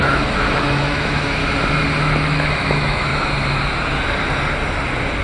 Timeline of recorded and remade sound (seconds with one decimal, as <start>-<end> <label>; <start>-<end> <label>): 0.0-1.4 remade; 1.4-2.0 recorded; 2.0-3.1 remade; 3.1-5.2 recorded